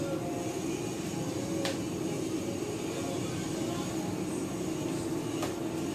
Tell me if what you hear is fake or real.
real